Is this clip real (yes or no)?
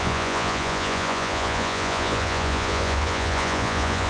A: no